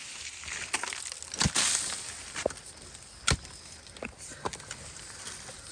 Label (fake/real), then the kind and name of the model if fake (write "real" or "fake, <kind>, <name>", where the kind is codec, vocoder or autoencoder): real